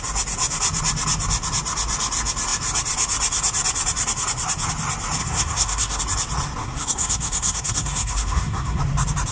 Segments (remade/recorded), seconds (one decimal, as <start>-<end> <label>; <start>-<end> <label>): 0.0-5.2 recorded; 5.2-6.0 remade; 6.0-6.6 recorded; 6.6-8.8 remade; 8.8-9.3 recorded